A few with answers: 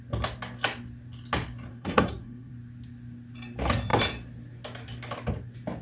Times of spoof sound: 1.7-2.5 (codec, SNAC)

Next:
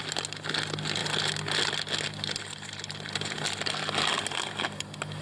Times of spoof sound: none

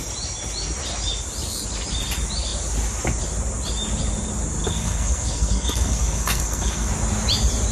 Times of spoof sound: 4.6-6.9 (codec, SNAC)

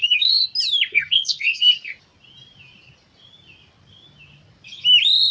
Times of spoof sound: 0.0-0.4 (codec, SNAC); 0.9-1.9

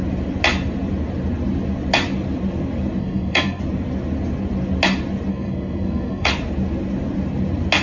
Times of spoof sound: 3.0-3.6 (codec, SNAC); 5.3-6.3

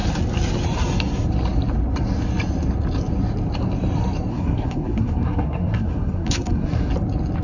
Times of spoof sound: 4.3-6.9 (codec, SNAC)

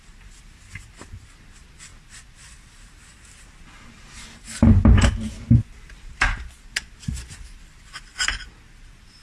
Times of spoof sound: none

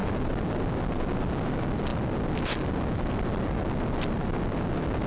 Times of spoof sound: none